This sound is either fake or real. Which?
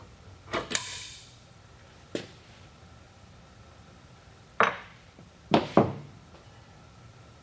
fake